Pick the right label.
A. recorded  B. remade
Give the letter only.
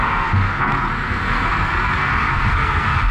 B